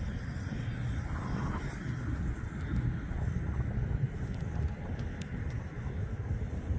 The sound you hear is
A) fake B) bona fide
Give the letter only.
B